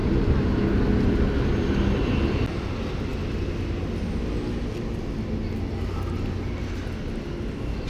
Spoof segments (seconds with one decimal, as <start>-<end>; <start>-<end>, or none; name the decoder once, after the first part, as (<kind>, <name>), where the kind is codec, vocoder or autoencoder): none